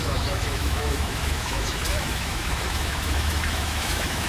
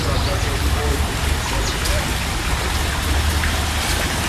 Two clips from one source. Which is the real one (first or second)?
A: second